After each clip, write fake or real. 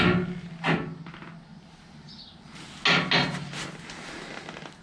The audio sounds real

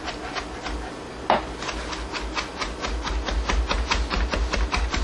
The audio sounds real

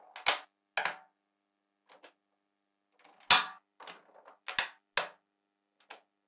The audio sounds real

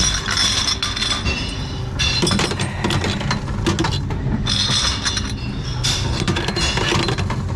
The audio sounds real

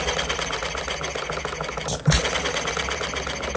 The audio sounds real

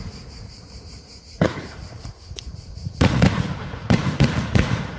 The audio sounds fake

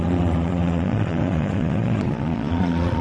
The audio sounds fake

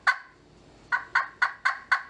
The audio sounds real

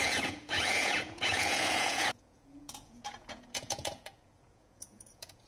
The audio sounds fake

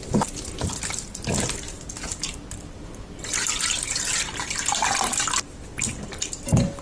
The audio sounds real